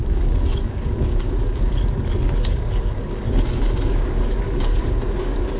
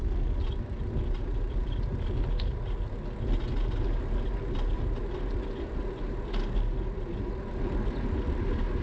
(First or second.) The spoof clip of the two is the first